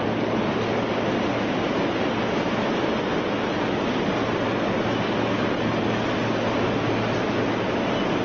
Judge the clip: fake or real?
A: real